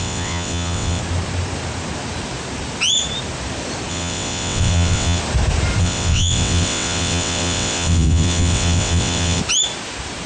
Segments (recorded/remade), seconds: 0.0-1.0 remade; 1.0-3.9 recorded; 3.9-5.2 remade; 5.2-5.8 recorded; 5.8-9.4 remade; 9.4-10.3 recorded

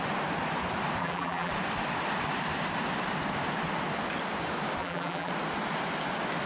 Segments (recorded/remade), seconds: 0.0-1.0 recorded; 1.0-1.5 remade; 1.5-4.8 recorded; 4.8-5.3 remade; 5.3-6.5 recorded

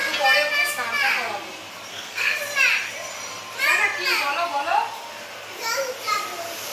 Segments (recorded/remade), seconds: 0.0-1.9 recorded; 1.9-2.4 remade; 2.4-6.7 recorded

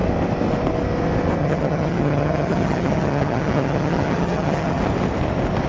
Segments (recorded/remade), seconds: 0.0-1.4 recorded; 1.4-4.8 remade; 4.8-5.7 recorded

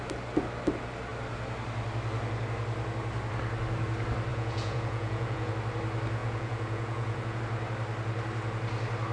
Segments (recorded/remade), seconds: 0.0-4.3 recorded; 4.3-5.5 remade; 5.5-6.2 recorded; 6.2-7.4 remade; 7.4-9.1 recorded

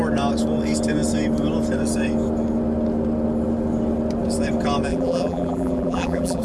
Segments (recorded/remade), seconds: 0.0-4.9 recorded; 4.9-6.4 remade